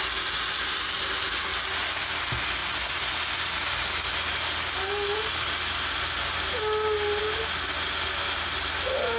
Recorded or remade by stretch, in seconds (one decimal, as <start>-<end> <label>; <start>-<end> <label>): 0.0-9.2 recorded